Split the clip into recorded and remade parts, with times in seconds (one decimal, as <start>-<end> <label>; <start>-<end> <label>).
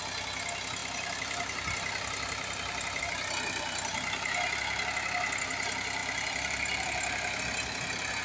0.0-0.8 recorded; 0.8-3.0 remade; 3.0-6.0 recorded; 6.0-7.4 remade; 7.4-8.2 recorded